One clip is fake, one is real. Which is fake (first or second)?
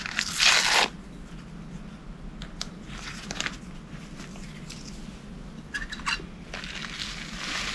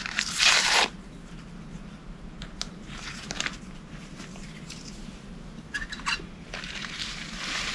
second